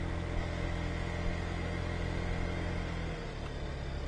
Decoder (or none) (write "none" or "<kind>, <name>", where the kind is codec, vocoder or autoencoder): none